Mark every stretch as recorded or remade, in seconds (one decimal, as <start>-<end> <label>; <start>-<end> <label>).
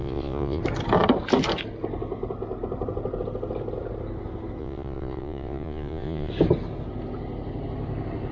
0.0-0.6 remade; 0.6-4.6 recorded; 4.6-6.3 remade; 6.3-8.3 recorded